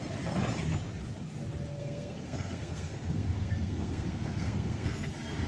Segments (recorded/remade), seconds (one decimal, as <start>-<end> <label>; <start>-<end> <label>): 0.0-1.8 recorded; 1.8-5.1 remade; 5.1-5.5 recorded